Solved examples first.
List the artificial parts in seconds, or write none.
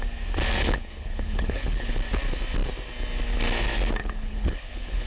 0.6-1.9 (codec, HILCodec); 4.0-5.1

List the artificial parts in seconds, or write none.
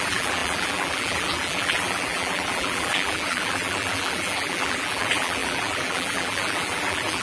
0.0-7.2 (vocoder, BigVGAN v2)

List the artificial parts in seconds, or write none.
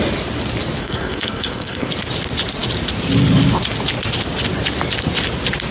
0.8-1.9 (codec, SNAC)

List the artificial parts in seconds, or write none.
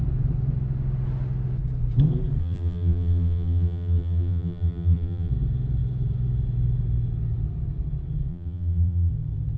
2.4-5.3 (vocoder, BigVGAN v2); 8.3-9.1